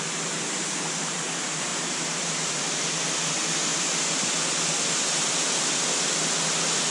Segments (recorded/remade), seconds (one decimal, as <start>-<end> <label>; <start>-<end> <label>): 0.0-1.7 recorded; 1.7-2.5 remade; 2.5-6.9 recorded